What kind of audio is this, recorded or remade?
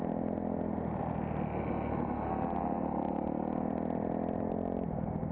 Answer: recorded